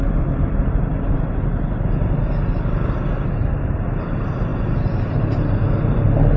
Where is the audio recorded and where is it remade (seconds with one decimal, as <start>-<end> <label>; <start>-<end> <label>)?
0.0-6.4 recorded